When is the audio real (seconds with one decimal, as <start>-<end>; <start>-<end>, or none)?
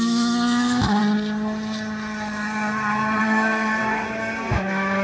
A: 1.0-3.2; 3.8-4.5